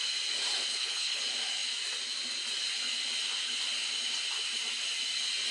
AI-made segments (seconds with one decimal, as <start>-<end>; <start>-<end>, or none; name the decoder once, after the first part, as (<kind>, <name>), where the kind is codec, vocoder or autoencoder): 0.7-1.2 (codec, HILCodec)